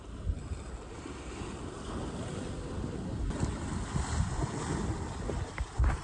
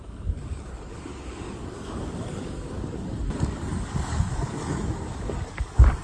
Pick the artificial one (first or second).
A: second